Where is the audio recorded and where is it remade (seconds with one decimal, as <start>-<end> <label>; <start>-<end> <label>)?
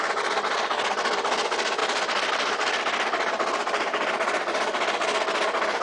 0.0-5.8 recorded